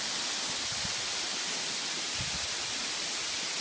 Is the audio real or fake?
real